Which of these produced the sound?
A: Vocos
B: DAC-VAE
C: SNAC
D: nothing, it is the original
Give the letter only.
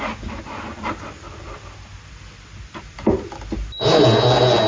D